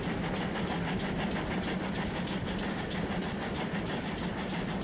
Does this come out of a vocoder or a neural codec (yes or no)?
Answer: no